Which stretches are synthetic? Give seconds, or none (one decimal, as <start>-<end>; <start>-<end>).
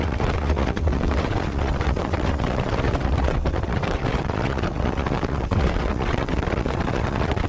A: 0.0-7.5